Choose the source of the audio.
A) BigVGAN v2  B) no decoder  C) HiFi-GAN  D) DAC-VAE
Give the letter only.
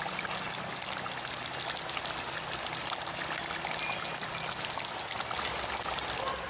B